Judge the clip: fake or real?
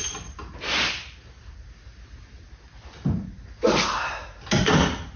real